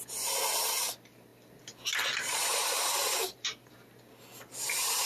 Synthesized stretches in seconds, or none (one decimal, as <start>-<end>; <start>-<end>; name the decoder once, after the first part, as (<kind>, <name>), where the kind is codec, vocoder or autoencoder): none